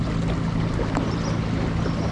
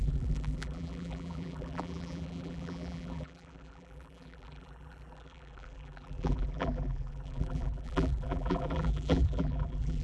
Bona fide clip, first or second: first